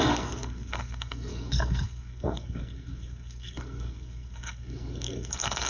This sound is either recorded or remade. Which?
remade